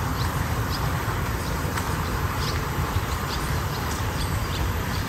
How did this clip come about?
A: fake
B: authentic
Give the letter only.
A